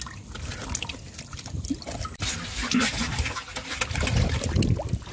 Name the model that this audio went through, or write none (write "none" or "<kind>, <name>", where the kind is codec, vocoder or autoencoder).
none